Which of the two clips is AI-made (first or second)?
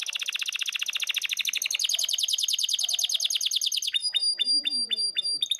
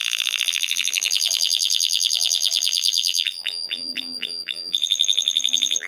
second